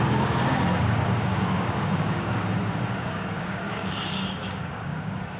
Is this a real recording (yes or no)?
no